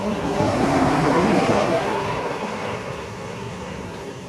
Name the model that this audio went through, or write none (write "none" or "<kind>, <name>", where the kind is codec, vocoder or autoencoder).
codec, SNAC